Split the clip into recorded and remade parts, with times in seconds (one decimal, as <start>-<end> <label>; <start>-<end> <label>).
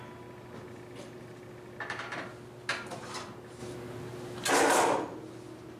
0.0-5.8 recorded